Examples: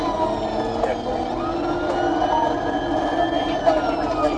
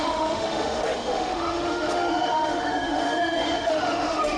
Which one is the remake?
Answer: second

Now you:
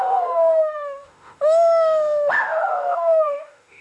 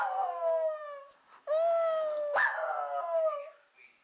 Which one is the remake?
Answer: first